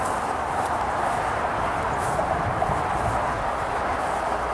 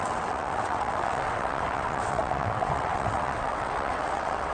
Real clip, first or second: first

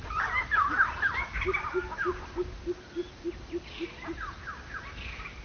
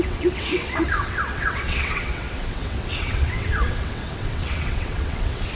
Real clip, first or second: first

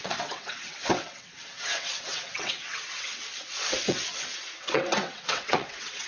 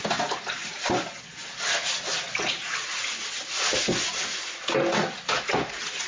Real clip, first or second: second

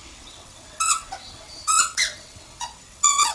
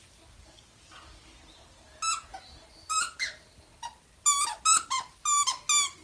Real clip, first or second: second